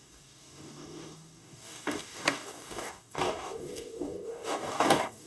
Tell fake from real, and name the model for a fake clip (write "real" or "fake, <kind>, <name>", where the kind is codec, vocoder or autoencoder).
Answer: fake, codec, DAC